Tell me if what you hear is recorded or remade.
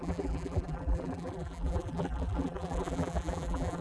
remade